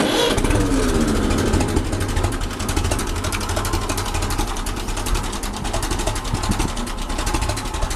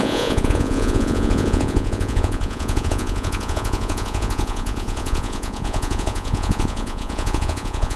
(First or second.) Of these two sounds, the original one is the first